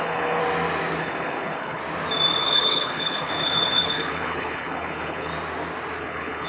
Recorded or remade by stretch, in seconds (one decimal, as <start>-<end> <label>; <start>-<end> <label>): 0.0-0.4 remade; 0.4-1.0 recorded; 1.0-1.8 remade; 1.8-2.4 recorded; 2.4-5.3 remade; 5.3-6.0 recorded; 6.0-6.5 remade